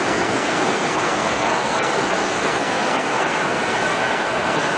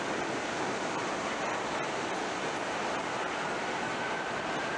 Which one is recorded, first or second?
second